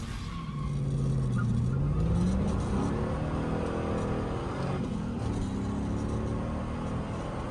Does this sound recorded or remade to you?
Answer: recorded